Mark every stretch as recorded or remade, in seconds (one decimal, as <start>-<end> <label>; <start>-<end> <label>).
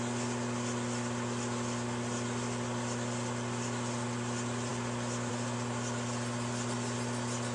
0.0-7.5 recorded